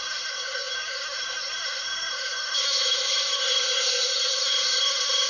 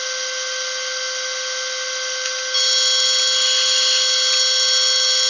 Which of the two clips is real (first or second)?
second